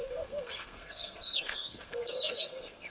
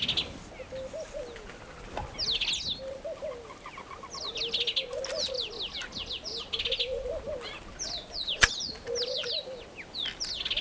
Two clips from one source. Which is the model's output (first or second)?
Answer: first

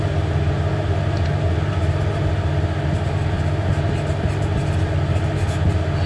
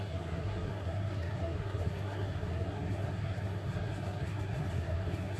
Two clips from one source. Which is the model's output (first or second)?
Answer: second